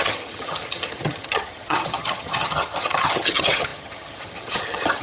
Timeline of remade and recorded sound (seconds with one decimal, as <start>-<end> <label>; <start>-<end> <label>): 0.0-5.0 remade